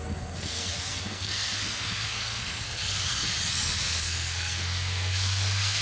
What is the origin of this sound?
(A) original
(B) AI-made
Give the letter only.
B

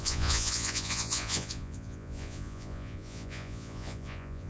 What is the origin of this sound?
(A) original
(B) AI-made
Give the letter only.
B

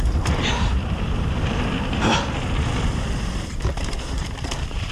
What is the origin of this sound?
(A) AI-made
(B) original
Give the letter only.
A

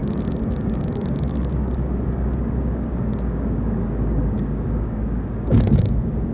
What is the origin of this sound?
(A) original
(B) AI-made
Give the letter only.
B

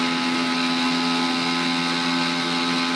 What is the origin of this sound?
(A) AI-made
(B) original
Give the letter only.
B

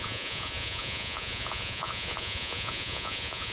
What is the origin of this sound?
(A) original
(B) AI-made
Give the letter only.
B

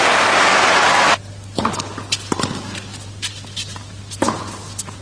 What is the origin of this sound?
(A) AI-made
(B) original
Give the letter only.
B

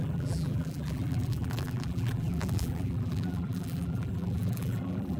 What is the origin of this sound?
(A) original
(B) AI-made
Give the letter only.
B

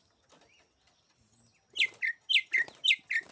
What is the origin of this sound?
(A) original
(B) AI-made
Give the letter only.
A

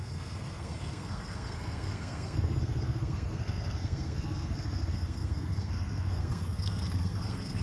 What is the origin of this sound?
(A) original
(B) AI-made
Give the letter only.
B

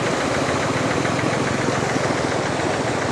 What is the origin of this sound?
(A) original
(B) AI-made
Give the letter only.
A